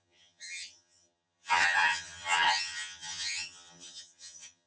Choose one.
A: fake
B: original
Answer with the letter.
A